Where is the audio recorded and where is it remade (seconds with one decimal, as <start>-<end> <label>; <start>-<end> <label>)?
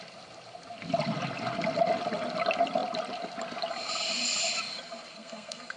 0.0-5.1 recorded; 5.1-5.8 remade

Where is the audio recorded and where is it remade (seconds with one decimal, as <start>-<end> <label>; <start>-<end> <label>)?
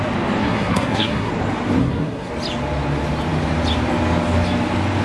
0.0-0.4 recorded; 0.4-1.3 remade; 1.3-1.8 recorded; 1.8-2.3 remade; 2.3-5.0 recorded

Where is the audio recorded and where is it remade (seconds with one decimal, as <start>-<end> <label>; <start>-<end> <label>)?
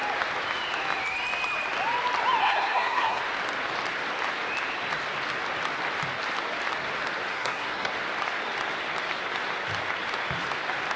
0.0-2.4 recorded; 2.4-3.2 remade; 3.2-7.3 recorded; 7.3-7.9 remade; 7.9-11.0 recorded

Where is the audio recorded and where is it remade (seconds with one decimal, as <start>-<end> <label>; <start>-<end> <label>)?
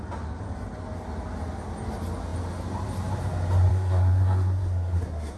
0.0-3.7 recorded; 3.7-5.4 remade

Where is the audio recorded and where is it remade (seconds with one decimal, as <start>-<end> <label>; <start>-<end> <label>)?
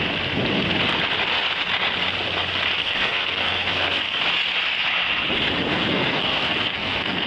0.0-2.8 recorded; 2.8-4.2 remade; 4.2-5.7 recorded; 5.7-7.3 remade